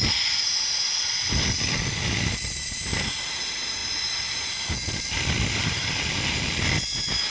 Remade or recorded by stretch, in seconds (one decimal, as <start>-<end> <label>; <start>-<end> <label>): 0.0-7.3 recorded